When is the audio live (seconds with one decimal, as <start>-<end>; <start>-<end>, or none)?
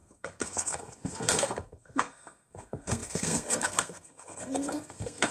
none